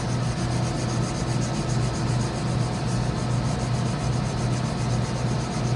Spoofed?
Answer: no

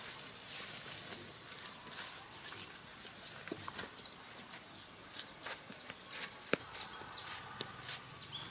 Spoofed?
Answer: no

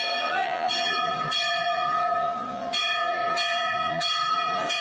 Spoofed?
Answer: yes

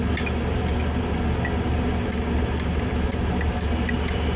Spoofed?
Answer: no